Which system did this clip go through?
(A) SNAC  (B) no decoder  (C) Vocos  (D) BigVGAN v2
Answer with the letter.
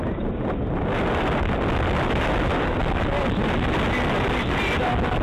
B